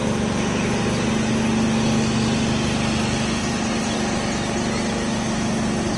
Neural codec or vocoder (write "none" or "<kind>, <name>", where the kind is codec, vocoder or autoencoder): none